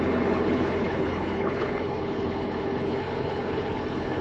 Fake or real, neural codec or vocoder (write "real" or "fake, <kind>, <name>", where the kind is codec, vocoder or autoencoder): fake, codec, HILCodec